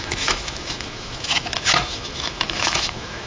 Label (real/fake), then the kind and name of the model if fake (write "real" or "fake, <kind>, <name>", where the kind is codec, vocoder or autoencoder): fake, autoencoder, DAC-VAE